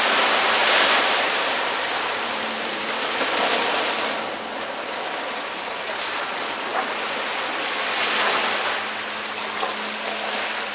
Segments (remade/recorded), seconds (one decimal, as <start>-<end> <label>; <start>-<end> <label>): 0.0-0.6 recorded; 0.6-2.9 remade; 2.9-10.7 recorded